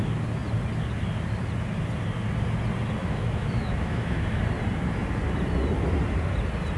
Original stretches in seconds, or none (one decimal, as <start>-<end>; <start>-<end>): 0.0-3.0; 4.4-6.8